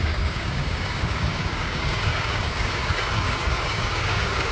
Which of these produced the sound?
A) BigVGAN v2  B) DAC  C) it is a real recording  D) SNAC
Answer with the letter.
B